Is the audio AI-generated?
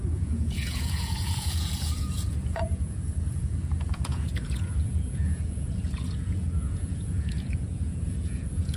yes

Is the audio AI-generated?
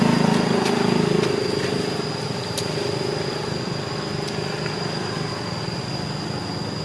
no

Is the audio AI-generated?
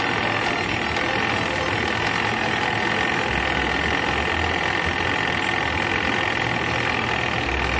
no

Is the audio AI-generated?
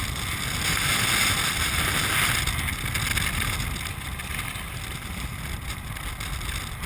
no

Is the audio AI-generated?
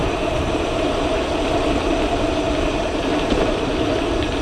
yes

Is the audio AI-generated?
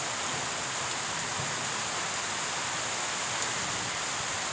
no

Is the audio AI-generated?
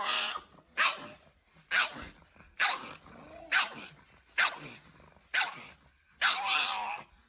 no